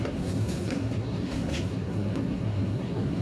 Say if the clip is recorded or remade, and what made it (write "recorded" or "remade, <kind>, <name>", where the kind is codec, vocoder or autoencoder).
remade, codec, SNAC